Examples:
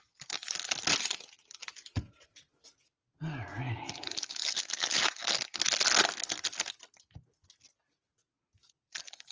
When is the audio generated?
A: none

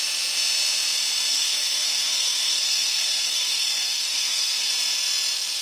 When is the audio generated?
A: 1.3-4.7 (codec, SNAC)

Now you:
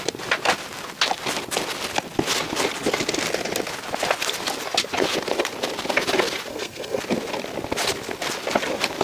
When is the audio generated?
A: 6.5-7.0 (codec, SNAC)